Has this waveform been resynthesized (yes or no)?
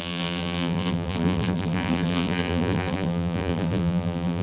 yes